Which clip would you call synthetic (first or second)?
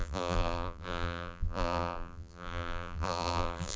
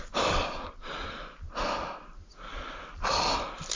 first